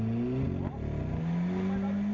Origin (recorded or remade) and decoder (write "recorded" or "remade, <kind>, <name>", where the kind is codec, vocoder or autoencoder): recorded